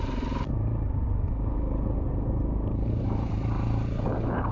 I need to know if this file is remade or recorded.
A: remade